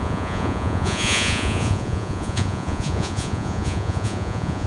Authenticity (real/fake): fake